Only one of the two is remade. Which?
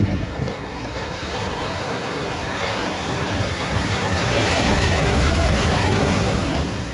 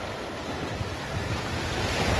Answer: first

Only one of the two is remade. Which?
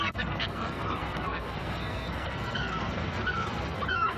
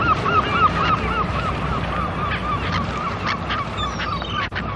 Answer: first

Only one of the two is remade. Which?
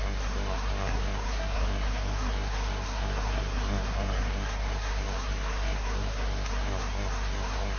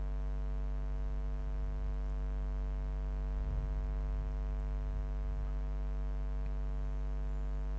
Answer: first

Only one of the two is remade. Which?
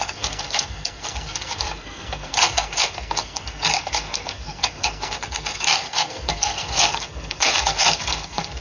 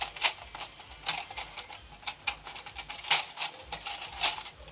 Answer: first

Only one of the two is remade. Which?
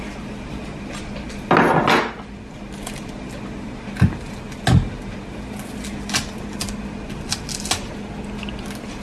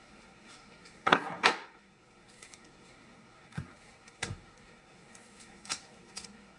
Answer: second